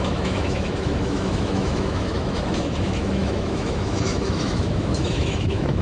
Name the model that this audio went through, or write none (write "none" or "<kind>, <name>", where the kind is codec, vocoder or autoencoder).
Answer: autoencoder, DAC-VAE